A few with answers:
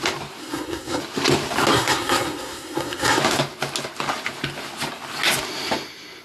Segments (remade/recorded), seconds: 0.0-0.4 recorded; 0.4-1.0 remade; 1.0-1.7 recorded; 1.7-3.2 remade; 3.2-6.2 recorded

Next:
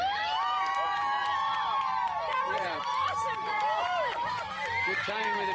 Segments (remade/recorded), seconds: 0.0-1.5 recorded; 1.5-4.5 remade; 4.5-5.5 recorded

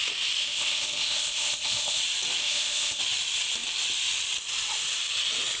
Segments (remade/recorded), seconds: 0.0-0.4 recorded; 0.4-2.0 remade; 2.0-2.4 recorded; 2.4-3.0 remade; 3.0-5.6 recorded

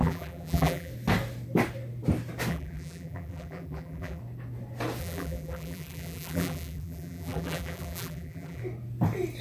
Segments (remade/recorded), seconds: 0.0-0.9 remade; 0.9-2.5 recorded; 2.5-4.2 remade; 4.2-5.0 recorded; 5.0-8.6 remade; 8.6-9.4 recorded

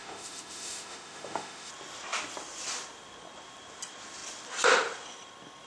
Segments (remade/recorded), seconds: 0.0-1.7 remade; 1.7-5.7 recorded